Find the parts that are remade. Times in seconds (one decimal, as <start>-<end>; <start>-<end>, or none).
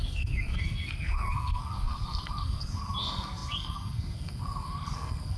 0.0-5.4